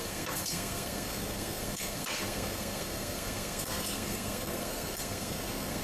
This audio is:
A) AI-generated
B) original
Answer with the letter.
A